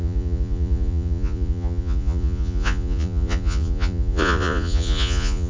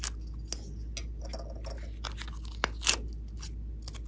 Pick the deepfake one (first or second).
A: first